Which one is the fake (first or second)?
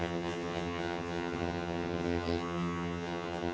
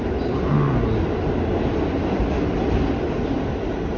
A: first